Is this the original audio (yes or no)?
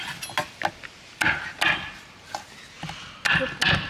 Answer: yes